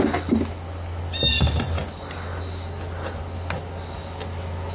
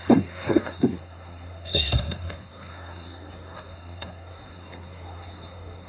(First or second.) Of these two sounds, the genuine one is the first